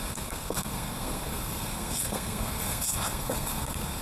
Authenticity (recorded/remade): remade